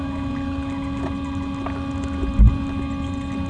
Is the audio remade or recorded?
recorded